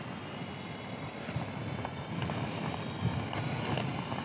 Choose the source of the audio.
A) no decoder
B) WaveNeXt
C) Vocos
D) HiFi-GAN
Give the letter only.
A